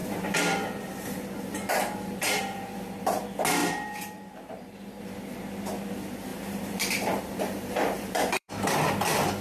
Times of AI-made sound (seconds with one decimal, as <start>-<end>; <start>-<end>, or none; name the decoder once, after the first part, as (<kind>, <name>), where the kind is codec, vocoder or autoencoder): 0.0-1.7 (vocoder, BigVGAN v2); 2.2-3.2; 3.6-5.0; 6.3-8.8